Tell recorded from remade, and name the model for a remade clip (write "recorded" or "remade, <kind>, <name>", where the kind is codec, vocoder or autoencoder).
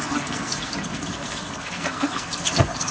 remade, codec, SNAC